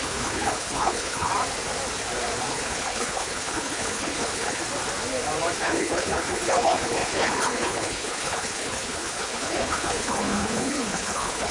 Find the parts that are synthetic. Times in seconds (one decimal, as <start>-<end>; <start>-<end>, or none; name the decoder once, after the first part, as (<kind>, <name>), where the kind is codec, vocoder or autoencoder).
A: 0.0-1.3 (codec, HILCodec); 2.5-4.6; 5.6-11.5